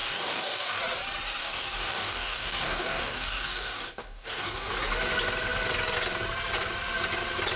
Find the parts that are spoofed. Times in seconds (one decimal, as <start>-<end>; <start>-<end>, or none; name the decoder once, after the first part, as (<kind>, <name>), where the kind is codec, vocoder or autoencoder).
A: 0.0-0.8 (codec, DAC); 1.4-4.7